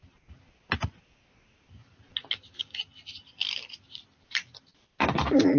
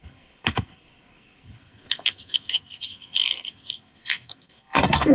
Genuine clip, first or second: first